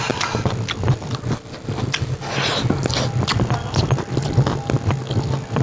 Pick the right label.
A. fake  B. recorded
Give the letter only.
B